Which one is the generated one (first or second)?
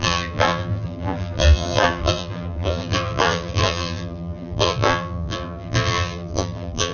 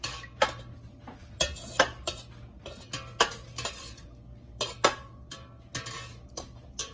first